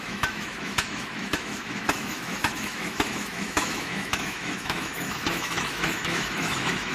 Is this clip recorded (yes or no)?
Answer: no